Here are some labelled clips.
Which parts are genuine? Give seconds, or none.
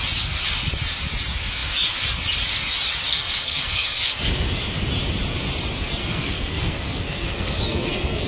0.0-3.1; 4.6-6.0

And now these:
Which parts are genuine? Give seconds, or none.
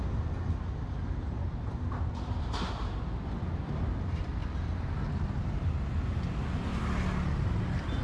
0.0-8.0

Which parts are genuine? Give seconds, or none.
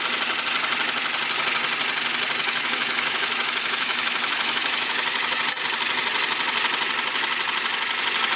0.0-2.4; 5.4-8.4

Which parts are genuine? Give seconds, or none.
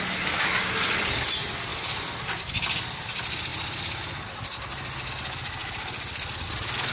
0.0-6.9